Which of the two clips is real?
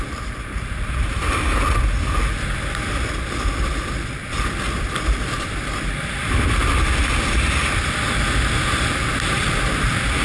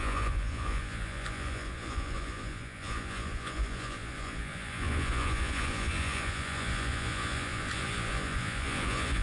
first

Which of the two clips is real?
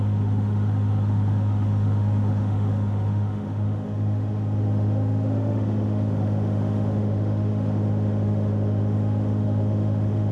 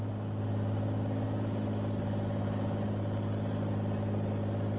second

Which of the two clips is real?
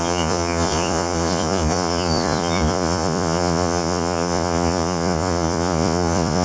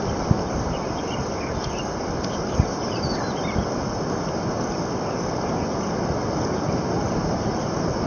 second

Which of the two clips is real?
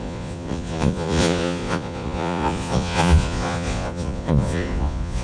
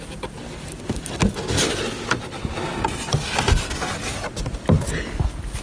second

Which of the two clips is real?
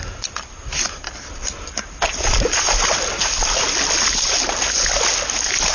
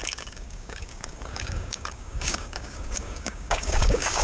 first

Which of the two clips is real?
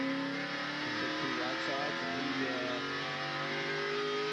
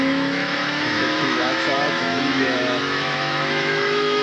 first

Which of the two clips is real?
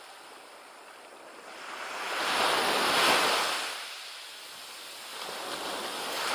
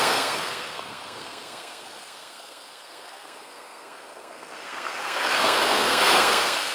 first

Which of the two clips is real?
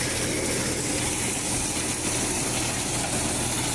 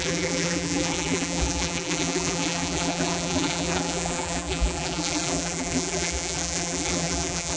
first